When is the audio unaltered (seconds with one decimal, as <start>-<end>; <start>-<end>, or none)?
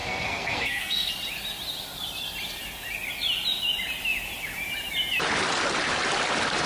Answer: 1.1-6.7